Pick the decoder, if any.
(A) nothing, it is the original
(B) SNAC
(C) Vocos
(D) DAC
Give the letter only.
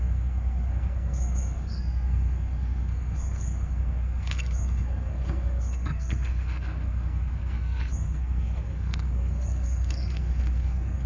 B